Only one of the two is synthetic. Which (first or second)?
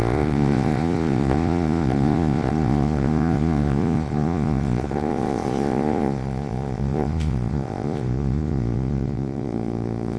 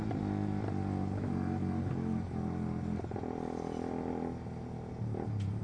first